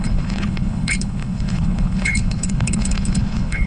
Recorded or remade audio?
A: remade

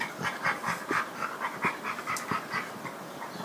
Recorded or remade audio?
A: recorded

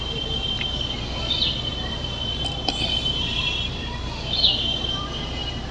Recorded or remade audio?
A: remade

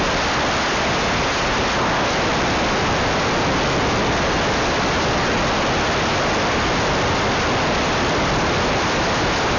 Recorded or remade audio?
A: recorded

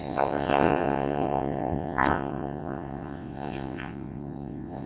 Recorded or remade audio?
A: remade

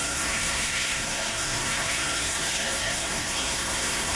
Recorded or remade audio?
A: remade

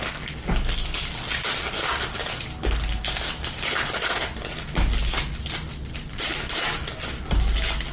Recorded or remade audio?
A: recorded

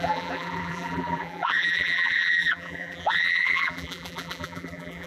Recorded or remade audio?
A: remade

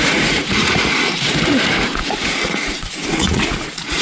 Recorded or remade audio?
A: remade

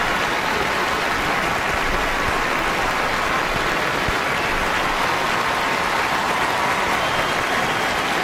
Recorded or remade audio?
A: recorded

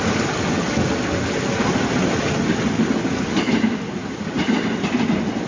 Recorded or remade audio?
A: recorded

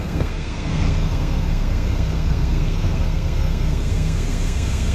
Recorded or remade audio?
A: remade